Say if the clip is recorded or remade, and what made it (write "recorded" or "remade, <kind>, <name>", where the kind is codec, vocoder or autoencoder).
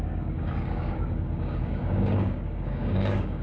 remade, codec, DAC